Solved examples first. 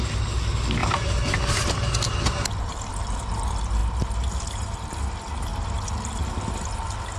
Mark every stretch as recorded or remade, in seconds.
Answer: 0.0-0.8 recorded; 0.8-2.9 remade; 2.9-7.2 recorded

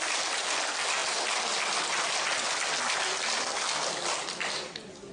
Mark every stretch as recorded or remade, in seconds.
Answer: 0.0-5.1 recorded

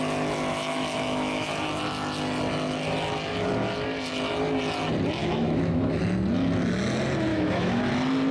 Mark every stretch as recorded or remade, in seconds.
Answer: 0.0-0.5 recorded; 0.5-1.5 remade; 1.5-5.2 recorded; 5.2-6.0 remade; 6.0-7.3 recorded; 7.3-7.8 remade; 7.8-8.3 recorded

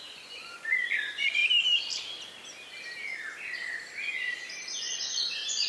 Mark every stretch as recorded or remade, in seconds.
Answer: 0.0-1.4 remade; 1.4-4.8 recorded; 4.8-5.7 remade

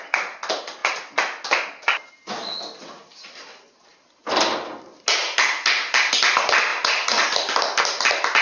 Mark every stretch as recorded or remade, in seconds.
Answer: 0.0-8.4 recorded